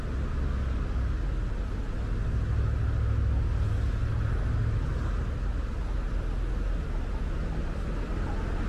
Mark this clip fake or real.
real